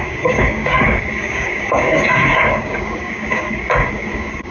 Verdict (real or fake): fake